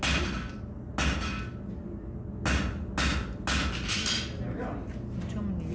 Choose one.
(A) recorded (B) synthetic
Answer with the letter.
A